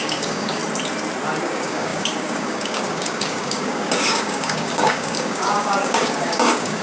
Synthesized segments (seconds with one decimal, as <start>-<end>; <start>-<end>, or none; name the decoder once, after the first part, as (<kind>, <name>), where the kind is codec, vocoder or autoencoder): 0.0-0.6 (codec, DAC); 1.4-6.8